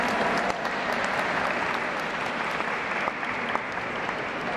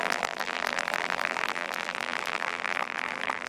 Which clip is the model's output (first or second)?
second